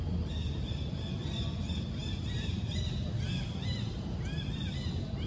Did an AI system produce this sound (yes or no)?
no